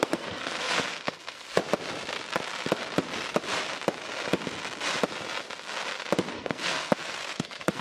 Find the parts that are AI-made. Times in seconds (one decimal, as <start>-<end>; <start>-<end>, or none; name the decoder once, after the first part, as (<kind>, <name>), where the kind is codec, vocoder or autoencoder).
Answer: 0.0-1.6 (codec, SNAC); 6.3-7.8